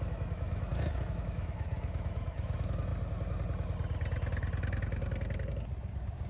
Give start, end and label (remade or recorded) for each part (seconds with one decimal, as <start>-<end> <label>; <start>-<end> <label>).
0.0-2.9 remade; 2.9-6.3 recorded